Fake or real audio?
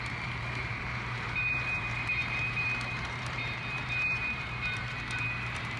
fake